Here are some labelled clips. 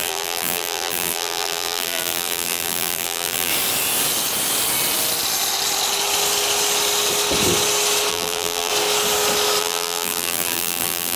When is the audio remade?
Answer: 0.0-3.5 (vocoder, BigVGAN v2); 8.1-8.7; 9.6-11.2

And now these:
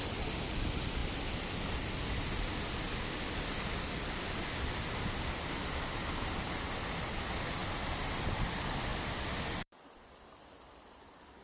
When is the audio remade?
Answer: 1.0-2.5 (vocoder, BigVGAN v2); 8.9-9.8

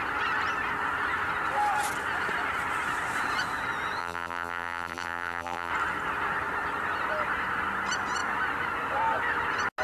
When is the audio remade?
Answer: 4.0-5.7 (vocoder, BigVGAN v2)

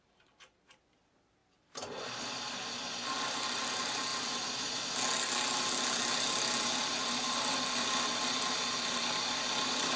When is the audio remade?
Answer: none